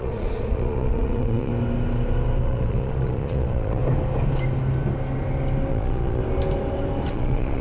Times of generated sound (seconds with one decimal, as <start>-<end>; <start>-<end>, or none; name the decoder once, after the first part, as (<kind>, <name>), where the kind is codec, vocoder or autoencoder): 0.0-1.5 (vocoder, Vocos); 2.4-3.8; 5.7-6.2; 7.1-7.6

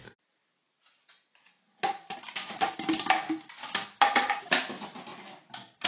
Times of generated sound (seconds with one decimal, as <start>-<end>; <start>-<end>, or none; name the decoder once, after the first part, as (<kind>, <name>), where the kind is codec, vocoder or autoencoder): none

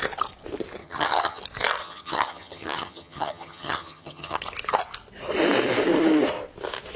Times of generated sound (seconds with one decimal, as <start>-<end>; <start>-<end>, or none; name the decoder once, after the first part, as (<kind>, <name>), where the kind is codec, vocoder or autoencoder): 0.8-1.4 (vocoder, HiFi-GAN); 1.8-4.4

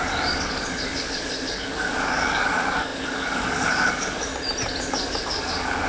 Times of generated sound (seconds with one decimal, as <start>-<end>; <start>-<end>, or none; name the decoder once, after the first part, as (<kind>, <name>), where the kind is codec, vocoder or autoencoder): 0.0-4.3 (codec, DAC); 4.8-5.9

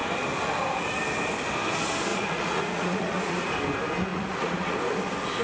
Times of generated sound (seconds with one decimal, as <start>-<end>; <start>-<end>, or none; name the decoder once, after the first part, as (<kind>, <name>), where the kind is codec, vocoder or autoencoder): 2.1-3.5 (vocoder, Vocos); 4.1-4.8